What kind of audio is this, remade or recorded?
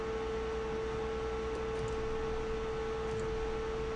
recorded